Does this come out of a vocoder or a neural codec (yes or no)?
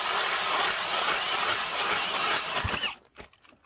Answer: no